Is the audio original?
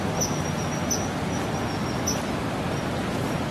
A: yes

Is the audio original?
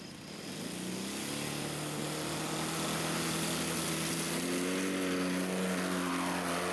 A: yes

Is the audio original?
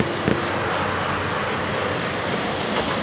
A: yes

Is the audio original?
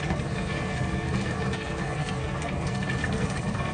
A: no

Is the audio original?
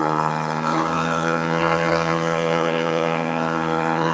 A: no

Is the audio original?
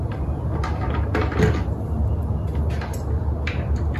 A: yes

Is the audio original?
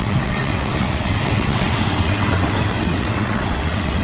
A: no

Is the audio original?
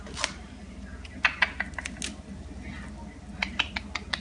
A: yes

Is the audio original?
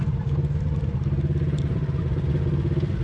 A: yes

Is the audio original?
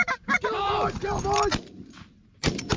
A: no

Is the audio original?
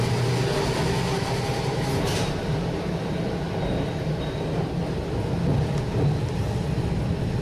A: yes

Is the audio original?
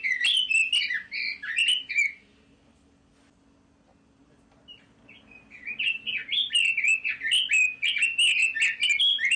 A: yes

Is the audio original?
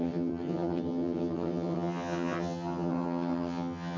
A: no